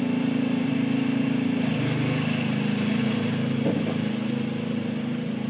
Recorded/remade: recorded